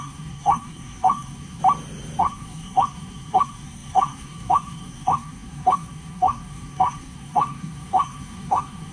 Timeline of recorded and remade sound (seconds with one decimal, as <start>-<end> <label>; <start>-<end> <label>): 0.0-1.6 remade; 1.6-2.2 recorded; 2.2-8.9 remade